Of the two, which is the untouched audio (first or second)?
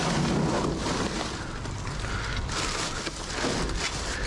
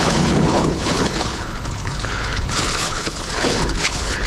first